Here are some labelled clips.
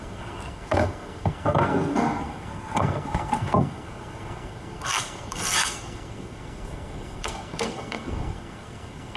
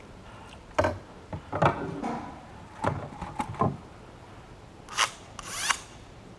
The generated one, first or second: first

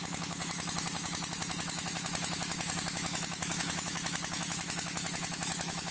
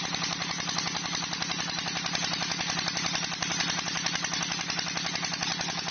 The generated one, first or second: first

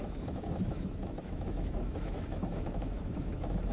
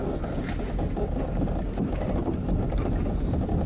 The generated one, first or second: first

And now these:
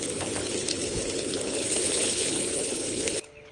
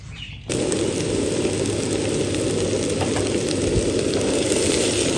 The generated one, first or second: first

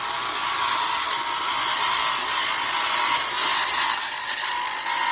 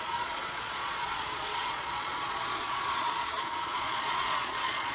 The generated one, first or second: second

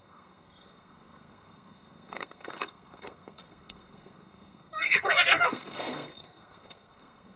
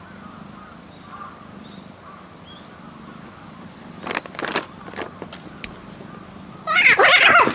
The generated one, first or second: first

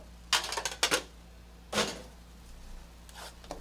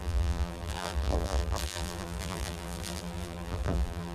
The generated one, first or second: second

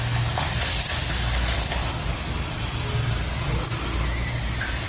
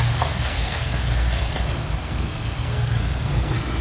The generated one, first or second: second